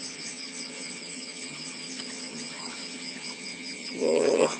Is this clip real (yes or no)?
no